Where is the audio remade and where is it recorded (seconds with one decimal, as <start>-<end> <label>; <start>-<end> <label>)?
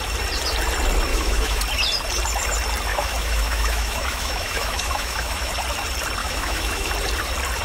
0.0-1.1 recorded; 1.1-1.6 remade; 1.6-2.9 recorded; 2.9-5.5 remade; 5.5-6.2 recorded; 6.2-6.9 remade; 6.9-7.6 recorded